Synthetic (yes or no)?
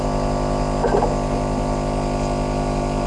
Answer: no